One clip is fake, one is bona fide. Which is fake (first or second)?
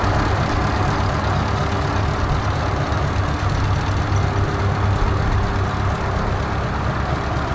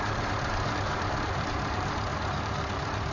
second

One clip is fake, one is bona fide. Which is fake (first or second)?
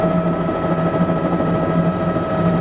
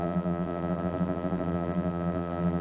second